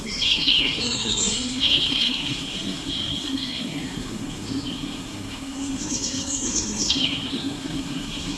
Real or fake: fake